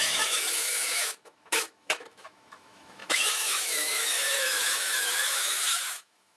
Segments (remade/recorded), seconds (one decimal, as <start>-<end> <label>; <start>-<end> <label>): 0.0-6.4 remade